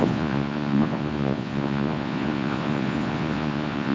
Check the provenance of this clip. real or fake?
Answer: fake